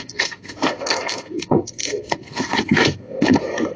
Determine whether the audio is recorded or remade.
remade